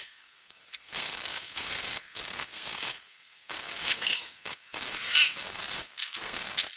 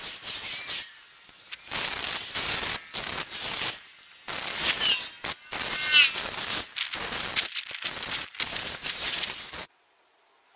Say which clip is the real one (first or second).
second